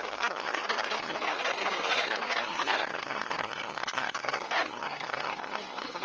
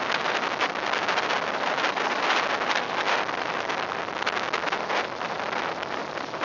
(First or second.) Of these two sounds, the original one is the second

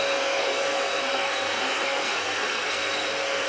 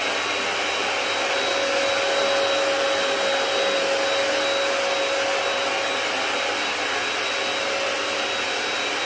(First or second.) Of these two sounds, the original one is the second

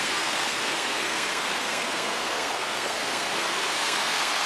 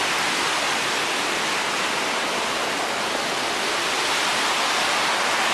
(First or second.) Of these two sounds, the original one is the second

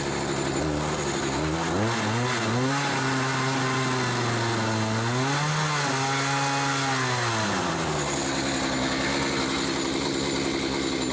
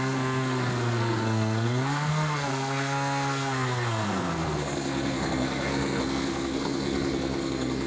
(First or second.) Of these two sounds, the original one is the first